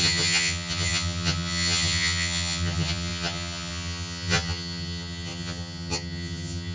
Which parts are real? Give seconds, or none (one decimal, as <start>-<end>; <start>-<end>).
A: none